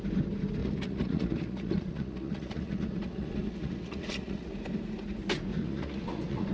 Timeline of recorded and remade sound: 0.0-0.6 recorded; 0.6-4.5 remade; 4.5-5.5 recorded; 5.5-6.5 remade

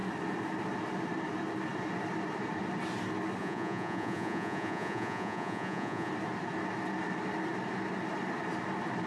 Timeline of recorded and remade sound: 0.0-3.4 recorded; 3.4-6.1 remade; 6.1-9.1 recorded

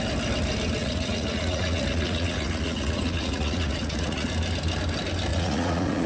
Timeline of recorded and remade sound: 0.0-0.8 recorded; 0.8-4.3 remade; 4.3-5.3 recorded; 5.3-6.1 remade